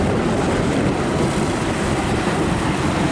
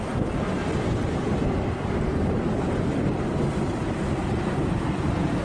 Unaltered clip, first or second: second